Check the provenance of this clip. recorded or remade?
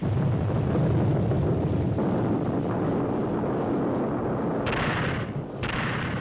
recorded